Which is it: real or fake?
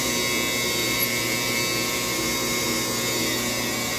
real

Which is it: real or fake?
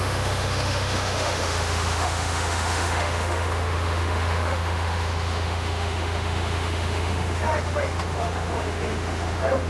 fake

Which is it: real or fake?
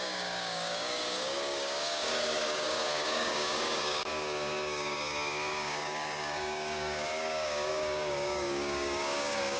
fake